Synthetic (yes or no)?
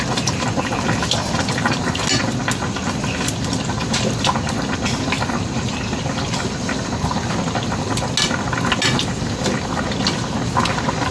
no